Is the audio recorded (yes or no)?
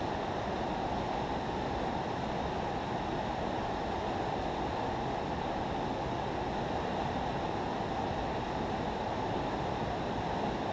yes